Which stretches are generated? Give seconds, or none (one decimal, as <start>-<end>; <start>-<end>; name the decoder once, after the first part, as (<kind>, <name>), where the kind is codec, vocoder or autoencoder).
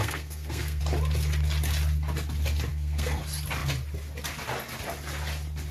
0.0-0.8 (codec, SNAC); 2.7-3.2